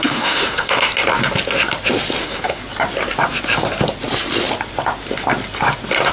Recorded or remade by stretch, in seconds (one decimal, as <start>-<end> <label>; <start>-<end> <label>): 0.0-0.9 remade; 0.9-2.2 recorded; 2.2-2.6 remade; 2.6-6.1 recorded